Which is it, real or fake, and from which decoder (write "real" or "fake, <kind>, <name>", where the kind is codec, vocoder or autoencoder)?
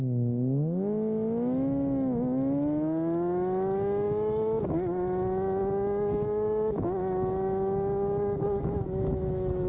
fake, autoencoder, DAC-VAE